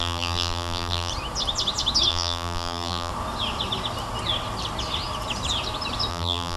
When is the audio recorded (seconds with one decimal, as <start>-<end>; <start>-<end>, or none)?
1.1-2.1; 3.1-6.1